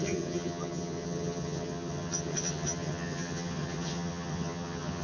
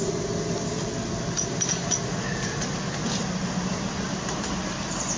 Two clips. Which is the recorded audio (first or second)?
second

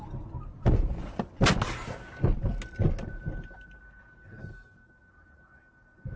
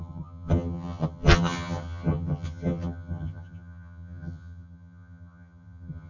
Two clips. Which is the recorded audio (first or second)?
first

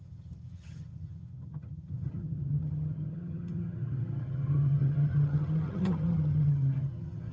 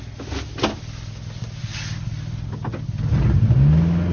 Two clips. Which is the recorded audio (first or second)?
second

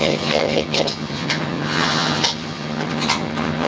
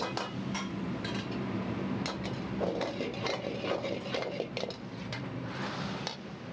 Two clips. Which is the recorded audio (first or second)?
second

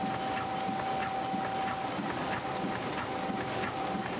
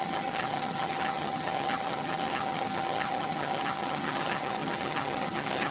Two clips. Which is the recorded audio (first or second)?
first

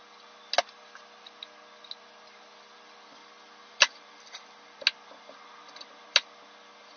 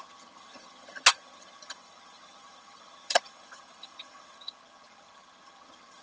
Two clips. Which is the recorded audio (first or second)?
first